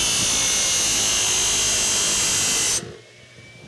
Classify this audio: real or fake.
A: real